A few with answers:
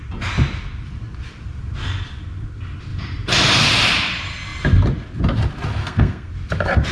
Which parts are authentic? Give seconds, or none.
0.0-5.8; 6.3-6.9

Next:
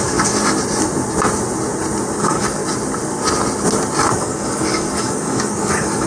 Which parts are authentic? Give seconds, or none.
0.4-2.2; 2.6-4.1

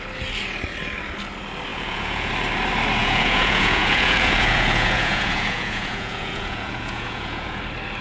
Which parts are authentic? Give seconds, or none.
0.0-1.7; 2.3-3.0; 7.6-8.0

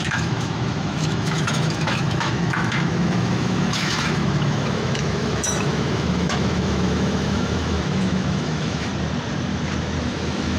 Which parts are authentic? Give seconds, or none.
8.9-10.0

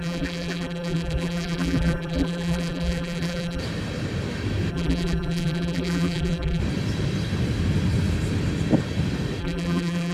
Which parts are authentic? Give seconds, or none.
3.6-4.7; 6.6-9.4

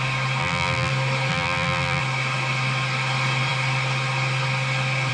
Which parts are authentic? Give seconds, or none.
0.0-0.4; 0.9-1.3; 2.0-5.1